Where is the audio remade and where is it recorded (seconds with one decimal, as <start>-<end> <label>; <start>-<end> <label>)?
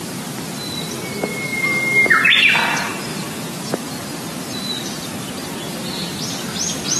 0.0-7.0 recorded